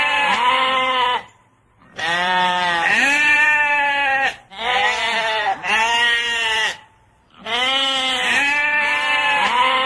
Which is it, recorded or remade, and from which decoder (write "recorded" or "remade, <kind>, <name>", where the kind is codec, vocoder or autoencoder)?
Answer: remade, vocoder, BigVGAN v2